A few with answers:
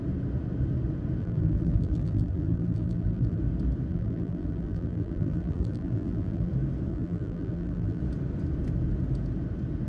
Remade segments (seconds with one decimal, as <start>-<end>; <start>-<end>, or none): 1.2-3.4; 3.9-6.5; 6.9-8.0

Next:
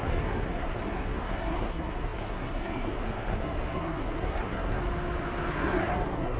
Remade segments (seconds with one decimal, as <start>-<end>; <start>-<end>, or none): 0.0-4.8; 5.5-6.4

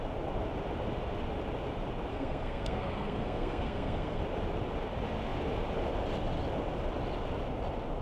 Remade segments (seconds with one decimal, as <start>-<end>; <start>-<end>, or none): 2.1-4.2